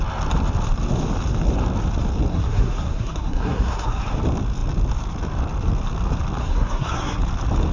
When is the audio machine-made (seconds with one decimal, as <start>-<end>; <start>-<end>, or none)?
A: 2.3-4.0; 6.4-7.2